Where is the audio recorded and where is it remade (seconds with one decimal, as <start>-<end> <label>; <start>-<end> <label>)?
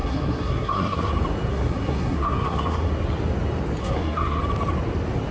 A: 0.0-1.1 remade; 1.1-1.5 recorded; 1.5-2.9 remade; 2.9-3.8 recorded; 3.8-4.4 remade; 4.4-5.3 recorded